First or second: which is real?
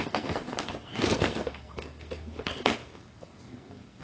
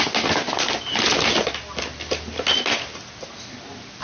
second